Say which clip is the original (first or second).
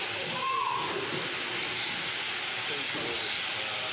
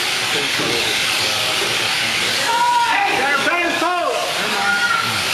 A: first